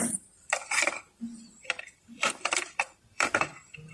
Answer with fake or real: fake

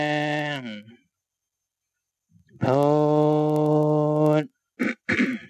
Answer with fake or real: real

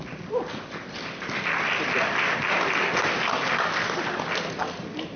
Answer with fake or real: fake